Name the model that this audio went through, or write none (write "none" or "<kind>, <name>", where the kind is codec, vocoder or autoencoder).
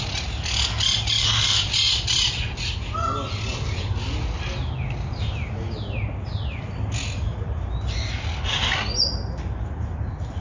none